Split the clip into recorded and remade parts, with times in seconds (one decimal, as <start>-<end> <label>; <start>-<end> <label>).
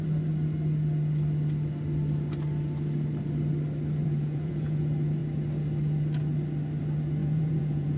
0.0-4.0 recorded; 4.0-4.8 remade; 4.8-7.2 recorded; 7.2-8.0 remade